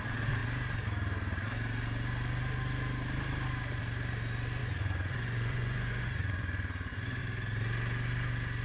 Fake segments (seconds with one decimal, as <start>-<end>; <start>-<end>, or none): 4.6-7.2